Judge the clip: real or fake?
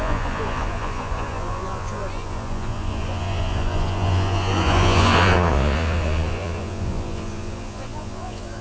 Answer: fake